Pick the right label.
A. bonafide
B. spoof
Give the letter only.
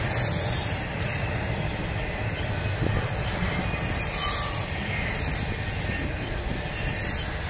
A